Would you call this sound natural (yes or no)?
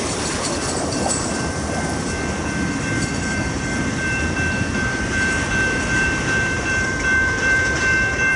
no